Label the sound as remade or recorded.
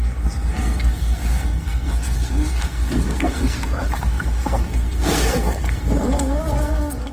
remade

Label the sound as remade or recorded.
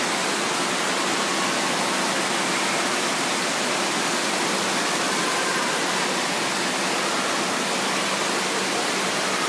recorded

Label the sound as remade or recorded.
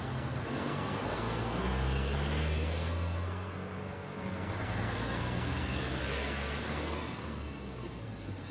remade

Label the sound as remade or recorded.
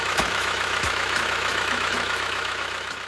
remade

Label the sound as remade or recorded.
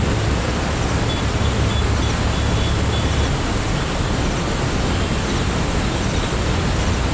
recorded